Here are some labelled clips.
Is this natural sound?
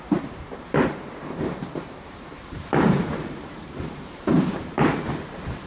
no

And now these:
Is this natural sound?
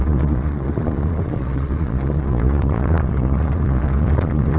no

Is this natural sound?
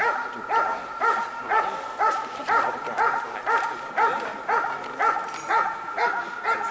yes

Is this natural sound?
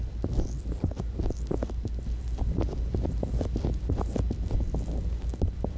yes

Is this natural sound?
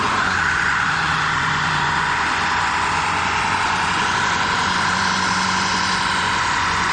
no